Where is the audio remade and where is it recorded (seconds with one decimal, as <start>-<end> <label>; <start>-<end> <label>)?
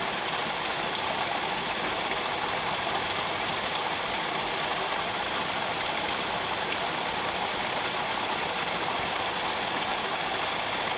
0.0-4.7 recorded; 4.7-9.9 remade; 9.9-11.0 recorded